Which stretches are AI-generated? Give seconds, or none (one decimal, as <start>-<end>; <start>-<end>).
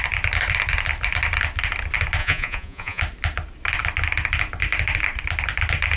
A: 2.2-3.0